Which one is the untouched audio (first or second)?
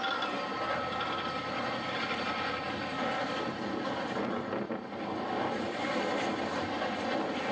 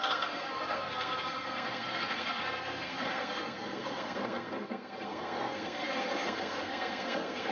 first